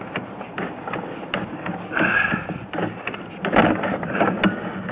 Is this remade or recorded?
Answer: recorded